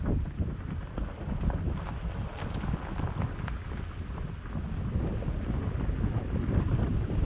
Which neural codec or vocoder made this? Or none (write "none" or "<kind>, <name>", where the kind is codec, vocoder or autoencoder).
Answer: none